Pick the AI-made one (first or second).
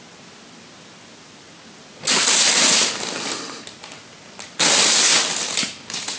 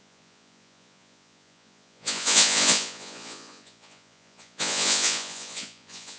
second